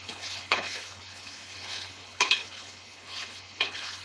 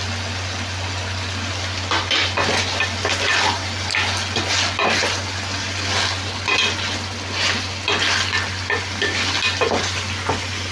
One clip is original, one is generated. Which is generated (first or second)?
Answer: first